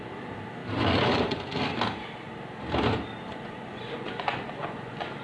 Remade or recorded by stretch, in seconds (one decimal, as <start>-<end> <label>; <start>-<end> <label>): 0.0-3.3 recorded; 3.3-5.2 remade